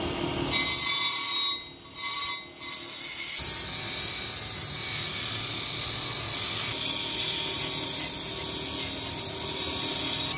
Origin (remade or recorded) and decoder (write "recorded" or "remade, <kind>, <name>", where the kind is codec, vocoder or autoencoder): recorded